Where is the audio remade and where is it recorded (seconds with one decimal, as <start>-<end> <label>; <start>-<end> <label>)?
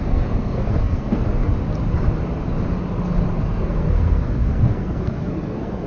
0.0-1.4 remade; 1.4-3.4 recorded; 3.4-5.9 remade